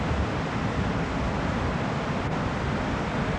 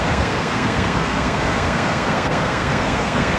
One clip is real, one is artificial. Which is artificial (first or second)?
second